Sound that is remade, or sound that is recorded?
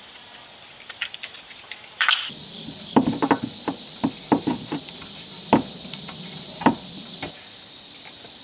remade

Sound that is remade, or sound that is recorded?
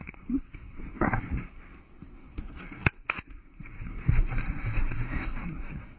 remade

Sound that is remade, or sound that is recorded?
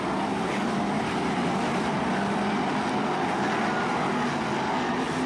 recorded